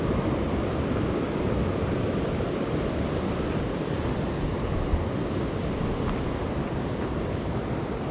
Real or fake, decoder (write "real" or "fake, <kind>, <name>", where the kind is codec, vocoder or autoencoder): real